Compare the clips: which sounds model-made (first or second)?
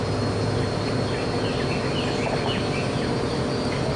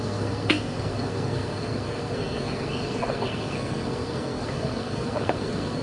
second